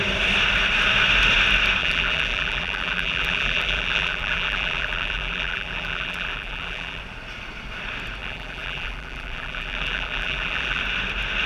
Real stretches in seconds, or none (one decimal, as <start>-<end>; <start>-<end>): 0.0-1.8; 7.0-8.2; 10.8-11.5